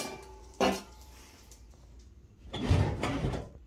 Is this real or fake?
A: fake